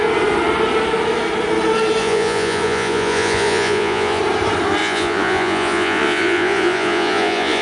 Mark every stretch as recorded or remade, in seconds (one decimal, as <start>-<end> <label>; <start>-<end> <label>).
0.0-2.0 recorded; 2.0-4.2 remade; 4.2-4.8 recorded; 4.8-7.6 remade